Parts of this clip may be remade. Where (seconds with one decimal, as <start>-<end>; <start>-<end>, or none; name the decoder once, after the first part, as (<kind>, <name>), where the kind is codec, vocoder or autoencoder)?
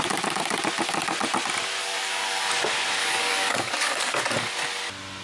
1.8-2.5 (codec, DAC); 3.0-4.2